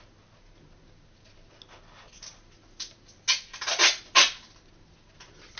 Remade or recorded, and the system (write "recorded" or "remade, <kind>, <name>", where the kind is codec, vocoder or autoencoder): recorded